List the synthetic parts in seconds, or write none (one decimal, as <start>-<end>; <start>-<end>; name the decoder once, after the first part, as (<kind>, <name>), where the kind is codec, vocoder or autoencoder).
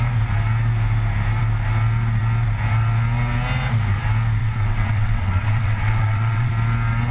4.4-6.5 (vocoder, WaveNeXt)